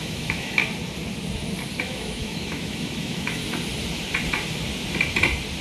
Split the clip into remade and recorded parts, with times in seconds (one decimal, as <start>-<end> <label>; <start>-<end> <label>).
0.0-0.6 remade; 0.6-1.8 recorded; 1.8-3.4 remade; 3.4-5.6 recorded